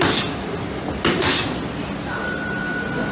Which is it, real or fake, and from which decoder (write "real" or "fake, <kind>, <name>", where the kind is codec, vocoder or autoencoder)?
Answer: real